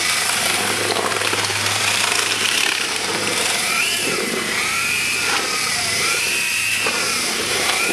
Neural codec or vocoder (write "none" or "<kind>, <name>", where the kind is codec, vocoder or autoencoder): vocoder, BigVGAN v2